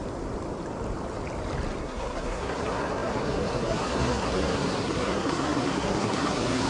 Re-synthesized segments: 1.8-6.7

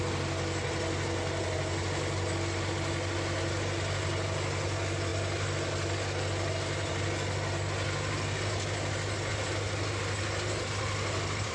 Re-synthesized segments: none